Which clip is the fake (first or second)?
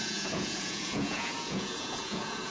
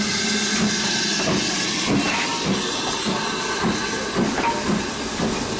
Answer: first